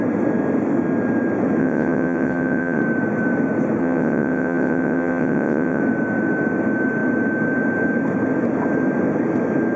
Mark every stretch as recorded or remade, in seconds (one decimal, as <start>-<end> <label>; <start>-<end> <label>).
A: 0.0-1.6 recorded; 1.6-2.8 remade; 2.8-3.8 recorded; 3.8-5.8 remade; 5.8-9.8 recorded